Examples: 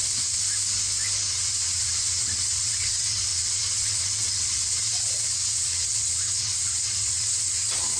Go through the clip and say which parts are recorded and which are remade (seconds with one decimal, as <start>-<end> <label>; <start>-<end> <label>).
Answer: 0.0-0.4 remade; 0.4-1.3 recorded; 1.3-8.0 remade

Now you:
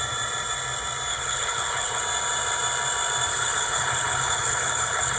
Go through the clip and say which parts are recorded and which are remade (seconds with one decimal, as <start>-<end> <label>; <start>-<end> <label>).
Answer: 0.0-1.1 recorded; 1.1-2.0 remade; 2.0-3.3 recorded; 3.3-5.2 remade

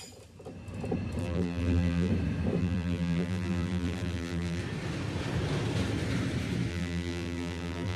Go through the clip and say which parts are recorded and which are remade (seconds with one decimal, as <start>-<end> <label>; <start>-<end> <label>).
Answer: 0.0-1.2 recorded; 1.2-2.1 remade; 2.1-2.6 recorded; 2.6-4.6 remade; 4.6-6.7 recorded; 6.7-8.0 remade

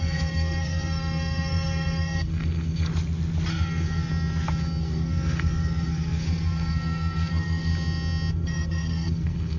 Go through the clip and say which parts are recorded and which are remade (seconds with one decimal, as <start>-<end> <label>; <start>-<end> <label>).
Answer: 0.0-2.9 remade; 2.9-3.5 recorded; 3.5-4.1 remade; 4.1-4.8 recorded; 4.8-7.7 remade; 7.7-8.3 recorded; 8.3-9.6 remade